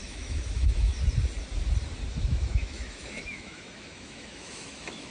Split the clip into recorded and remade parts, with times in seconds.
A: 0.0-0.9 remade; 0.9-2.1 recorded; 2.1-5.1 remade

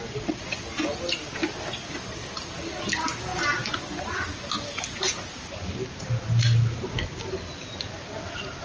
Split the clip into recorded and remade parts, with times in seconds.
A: 0.0-8.6 recorded

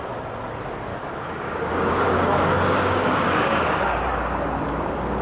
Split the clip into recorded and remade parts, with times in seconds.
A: 0.0-0.9 recorded; 0.9-3.8 remade; 3.8-5.2 recorded